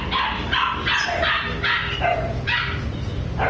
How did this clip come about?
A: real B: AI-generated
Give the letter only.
A